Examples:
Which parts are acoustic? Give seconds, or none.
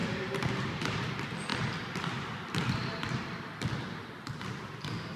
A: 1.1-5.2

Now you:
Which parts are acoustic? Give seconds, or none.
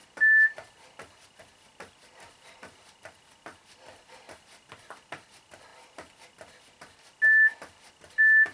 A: 0.0-8.5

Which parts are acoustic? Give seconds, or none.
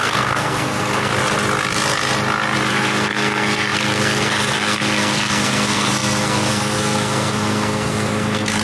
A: 1.1-2.7